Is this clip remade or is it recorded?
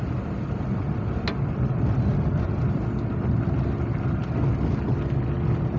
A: recorded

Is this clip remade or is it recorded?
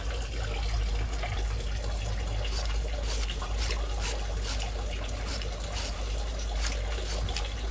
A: recorded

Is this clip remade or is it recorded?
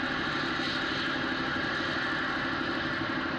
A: recorded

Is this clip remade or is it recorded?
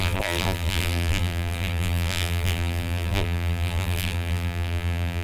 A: remade